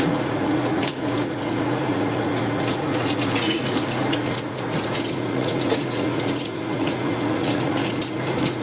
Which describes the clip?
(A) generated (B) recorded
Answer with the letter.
A